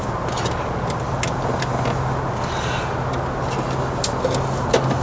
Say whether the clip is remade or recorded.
recorded